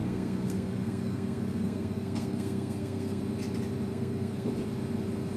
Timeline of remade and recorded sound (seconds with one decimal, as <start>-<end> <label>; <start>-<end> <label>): 0.0-3.2 remade; 3.2-3.9 recorded; 3.9-4.5 remade; 4.5-5.4 recorded